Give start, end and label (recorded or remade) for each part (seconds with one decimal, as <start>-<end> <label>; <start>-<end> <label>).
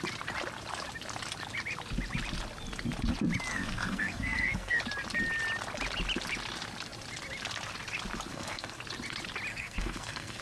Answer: 0.0-3.5 recorded; 3.5-4.8 remade; 4.8-8.3 recorded; 8.3-8.8 remade; 8.8-9.5 recorded; 9.5-10.4 remade